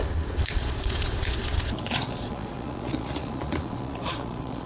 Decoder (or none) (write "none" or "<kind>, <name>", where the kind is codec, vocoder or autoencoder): vocoder, Vocos